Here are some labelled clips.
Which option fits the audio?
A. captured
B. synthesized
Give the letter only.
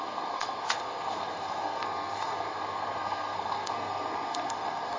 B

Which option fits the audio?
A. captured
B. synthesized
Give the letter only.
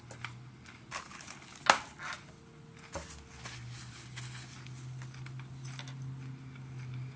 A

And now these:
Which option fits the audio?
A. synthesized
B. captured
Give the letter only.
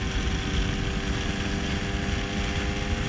B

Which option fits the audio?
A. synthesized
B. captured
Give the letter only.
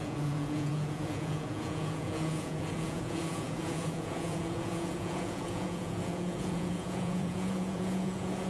A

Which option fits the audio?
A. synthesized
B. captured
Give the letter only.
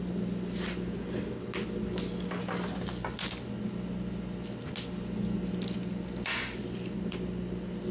B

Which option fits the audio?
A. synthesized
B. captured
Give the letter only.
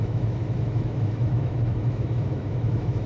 A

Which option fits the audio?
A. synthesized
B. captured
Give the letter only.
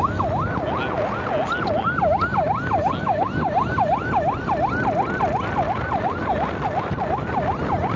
B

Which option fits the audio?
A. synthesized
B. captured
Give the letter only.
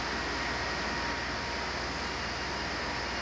B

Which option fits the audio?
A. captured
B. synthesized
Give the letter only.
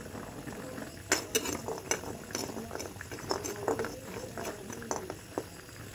A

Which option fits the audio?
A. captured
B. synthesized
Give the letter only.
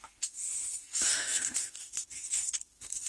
B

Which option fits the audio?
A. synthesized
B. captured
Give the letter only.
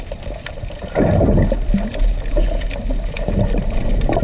B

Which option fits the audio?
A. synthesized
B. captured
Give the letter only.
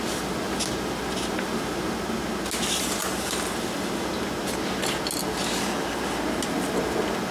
B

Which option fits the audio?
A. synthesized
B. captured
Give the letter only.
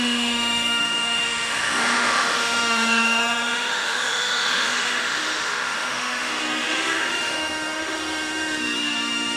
A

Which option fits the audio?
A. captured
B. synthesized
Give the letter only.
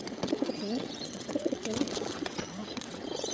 B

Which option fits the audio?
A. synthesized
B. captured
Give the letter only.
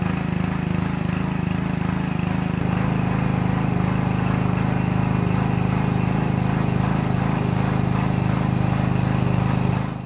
B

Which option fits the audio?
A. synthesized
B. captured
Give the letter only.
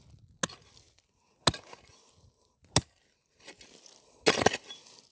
B